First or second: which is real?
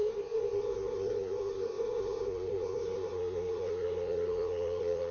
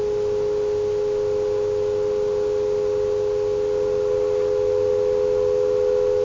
second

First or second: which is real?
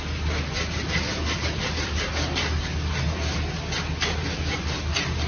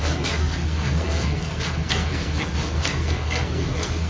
first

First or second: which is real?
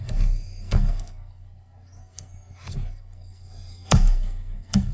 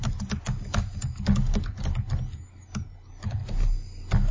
second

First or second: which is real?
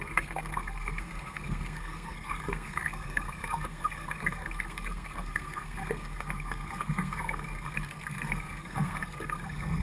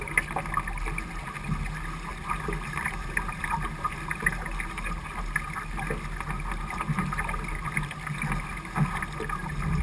second